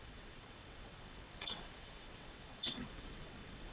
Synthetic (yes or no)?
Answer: yes